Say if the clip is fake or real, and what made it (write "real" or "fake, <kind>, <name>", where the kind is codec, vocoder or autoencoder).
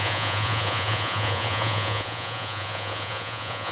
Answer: fake, vocoder, Vocos